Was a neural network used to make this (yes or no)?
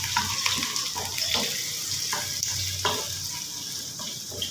no